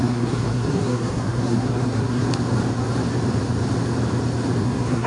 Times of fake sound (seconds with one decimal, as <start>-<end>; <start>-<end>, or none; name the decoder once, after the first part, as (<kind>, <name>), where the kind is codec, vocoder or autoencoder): 0.0-2.3 (codec, SNAC); 4.6-5.1

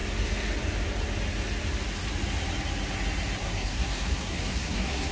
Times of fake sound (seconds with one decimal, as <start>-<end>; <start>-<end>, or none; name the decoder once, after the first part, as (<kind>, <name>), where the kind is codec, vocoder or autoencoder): 3.4-5.1 (codec, SNAC)

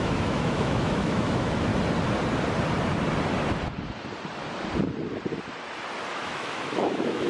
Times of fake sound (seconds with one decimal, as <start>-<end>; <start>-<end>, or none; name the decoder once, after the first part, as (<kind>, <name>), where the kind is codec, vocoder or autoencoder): 0.0-1.7 (autoencoder, DAC-VAE); 6.1-7.3

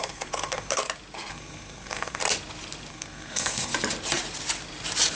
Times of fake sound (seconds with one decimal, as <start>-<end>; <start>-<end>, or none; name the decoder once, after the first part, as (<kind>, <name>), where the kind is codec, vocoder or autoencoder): 0.0-0.8 (codec, SNAC); 1.3-2.2; 2.9-3.7